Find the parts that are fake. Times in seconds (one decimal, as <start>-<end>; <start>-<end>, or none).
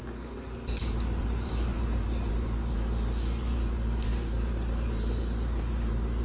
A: 0.8-6.2